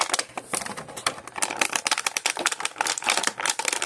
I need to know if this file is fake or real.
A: fake